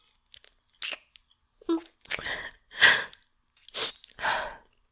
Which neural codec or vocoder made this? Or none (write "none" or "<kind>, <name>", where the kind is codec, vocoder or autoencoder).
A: none